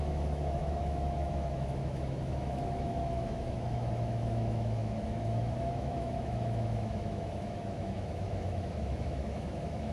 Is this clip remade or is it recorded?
remade